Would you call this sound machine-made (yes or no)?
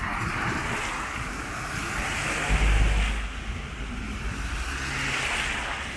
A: no